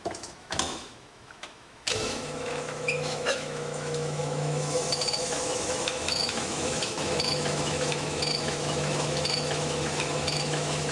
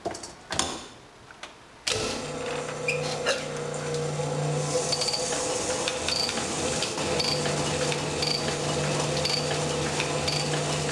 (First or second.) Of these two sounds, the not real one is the first